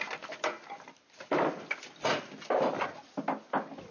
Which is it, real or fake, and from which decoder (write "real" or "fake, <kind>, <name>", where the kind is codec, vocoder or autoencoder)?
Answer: real